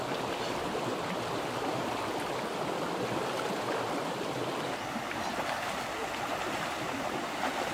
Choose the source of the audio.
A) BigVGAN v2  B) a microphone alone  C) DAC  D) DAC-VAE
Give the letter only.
A